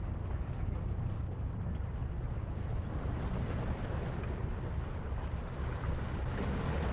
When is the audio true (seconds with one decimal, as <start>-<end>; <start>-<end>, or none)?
4.1-6.9